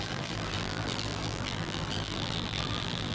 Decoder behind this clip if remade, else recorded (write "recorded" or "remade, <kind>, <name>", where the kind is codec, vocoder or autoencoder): remade, vocoder, BigVGAN v2